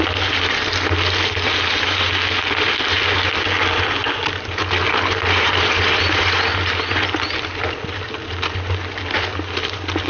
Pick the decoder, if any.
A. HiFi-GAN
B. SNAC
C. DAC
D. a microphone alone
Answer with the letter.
D